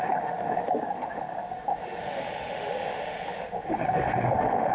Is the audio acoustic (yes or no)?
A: no